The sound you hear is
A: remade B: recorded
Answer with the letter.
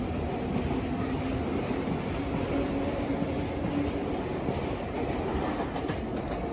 B